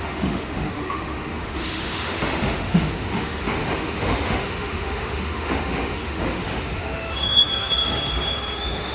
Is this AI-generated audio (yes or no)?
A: yes